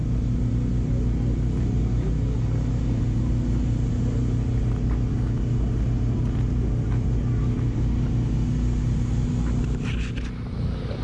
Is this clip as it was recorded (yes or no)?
yes